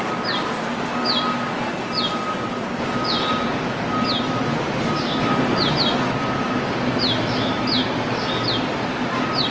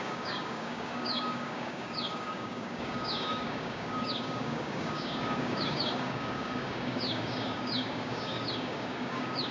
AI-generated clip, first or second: second